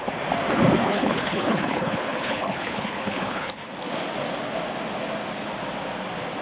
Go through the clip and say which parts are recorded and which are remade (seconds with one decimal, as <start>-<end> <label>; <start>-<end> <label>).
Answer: 0.0-0.8 recorded; 0.8-3.7 remade; 3.7-6.4 recorded